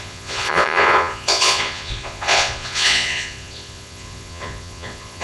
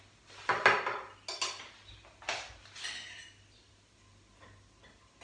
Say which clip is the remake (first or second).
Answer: first